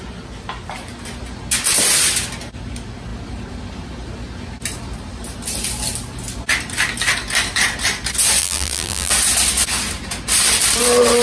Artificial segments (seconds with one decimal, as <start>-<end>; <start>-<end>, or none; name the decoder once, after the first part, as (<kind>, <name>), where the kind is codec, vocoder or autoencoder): 8.4-9.1 (vocoder, BigVGAN v2)